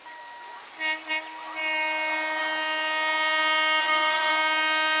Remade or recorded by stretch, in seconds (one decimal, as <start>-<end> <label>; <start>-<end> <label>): 0.0-3.8 recorded; 3.8-4.3 remade; 4.3-5.0 recorded